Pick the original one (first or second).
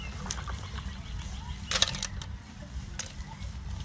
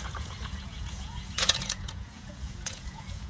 first